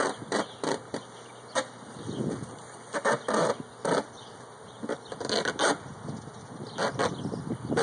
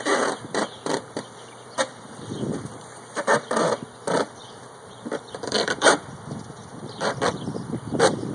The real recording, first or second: first